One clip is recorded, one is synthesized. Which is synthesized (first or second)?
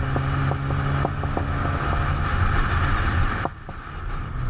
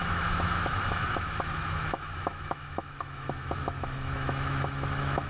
second